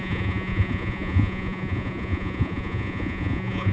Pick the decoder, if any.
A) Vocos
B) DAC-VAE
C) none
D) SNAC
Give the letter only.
A